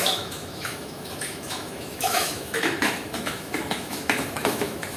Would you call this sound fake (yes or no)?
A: yes